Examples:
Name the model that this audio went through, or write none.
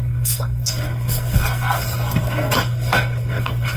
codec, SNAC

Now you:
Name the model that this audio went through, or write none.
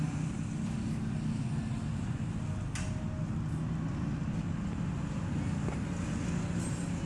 none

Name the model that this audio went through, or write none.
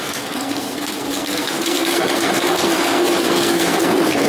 codec, SNAC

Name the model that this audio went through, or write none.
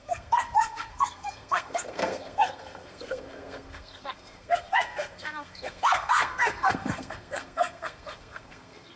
codec, SNAC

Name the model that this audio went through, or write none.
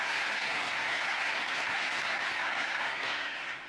codec, SNAC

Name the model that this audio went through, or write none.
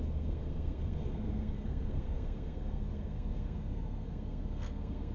codec, SNAC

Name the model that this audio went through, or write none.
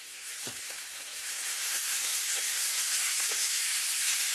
codec, SNAC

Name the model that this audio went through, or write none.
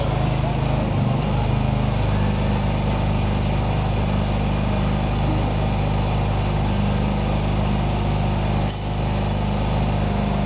none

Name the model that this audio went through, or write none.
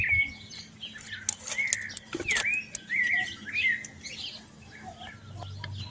none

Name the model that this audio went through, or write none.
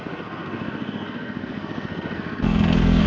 codec, SNAC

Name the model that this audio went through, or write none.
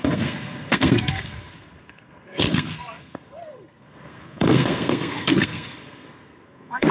codec, SNAC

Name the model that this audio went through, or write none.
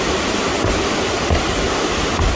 none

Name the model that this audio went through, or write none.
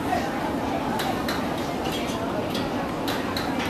none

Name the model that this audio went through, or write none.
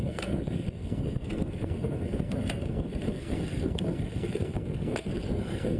codec, SNAC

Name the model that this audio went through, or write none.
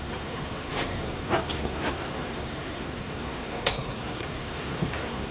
codec, SNAC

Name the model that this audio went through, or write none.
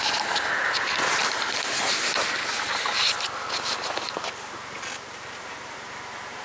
none